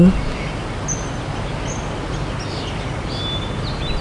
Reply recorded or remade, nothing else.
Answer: recorded